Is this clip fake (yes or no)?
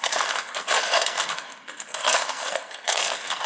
yes